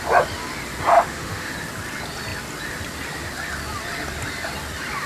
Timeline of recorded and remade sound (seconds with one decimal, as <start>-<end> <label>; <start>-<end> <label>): 0.0-0.9 recorded; 0.9-1.5 remade; 1.5-5.1 recorded